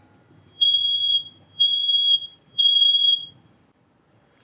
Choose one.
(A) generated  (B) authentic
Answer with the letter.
A